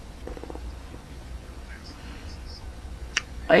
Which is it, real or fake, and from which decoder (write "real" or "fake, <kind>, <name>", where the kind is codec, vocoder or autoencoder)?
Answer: fake, vocoder, Vocos